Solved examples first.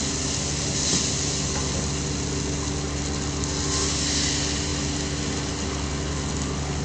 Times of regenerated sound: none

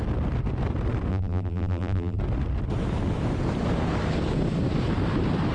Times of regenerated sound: 1.1-2.2 (vocoder, BigVGAN v2)